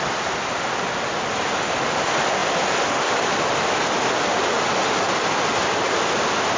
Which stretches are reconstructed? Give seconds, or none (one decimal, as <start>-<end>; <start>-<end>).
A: none